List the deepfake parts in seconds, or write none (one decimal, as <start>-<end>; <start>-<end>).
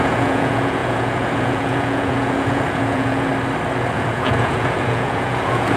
0.0-3.3; 3.9-5.8